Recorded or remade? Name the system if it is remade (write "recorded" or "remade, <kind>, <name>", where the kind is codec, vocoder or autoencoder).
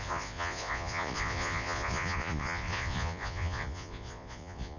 remade, vocoder, Vocos